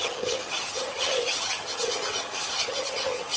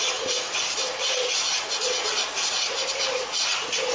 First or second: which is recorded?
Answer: second